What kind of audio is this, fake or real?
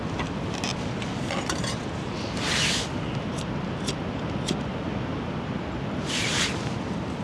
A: real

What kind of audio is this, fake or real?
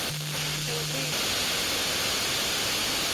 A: real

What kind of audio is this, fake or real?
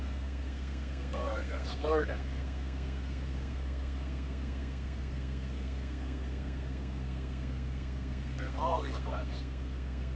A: fake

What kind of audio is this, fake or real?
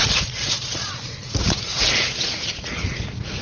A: fake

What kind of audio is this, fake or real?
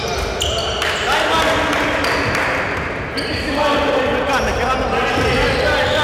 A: real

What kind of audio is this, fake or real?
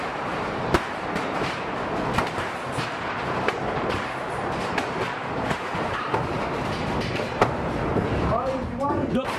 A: fake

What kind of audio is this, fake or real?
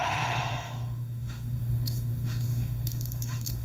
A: fake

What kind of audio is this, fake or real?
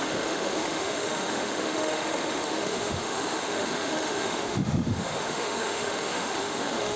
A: fake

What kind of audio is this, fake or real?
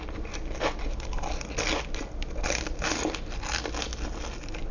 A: real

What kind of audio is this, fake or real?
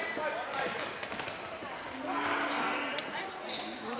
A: real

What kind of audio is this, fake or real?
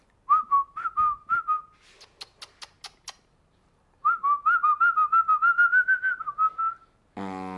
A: real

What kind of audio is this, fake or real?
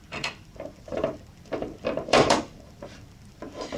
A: fake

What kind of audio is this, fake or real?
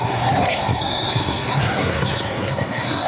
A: fake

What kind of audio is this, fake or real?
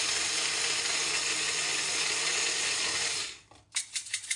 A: real